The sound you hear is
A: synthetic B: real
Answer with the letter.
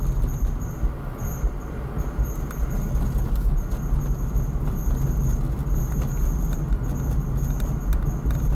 B